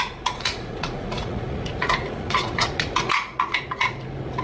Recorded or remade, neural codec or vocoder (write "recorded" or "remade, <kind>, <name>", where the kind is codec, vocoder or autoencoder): remade, vocoder, Vocos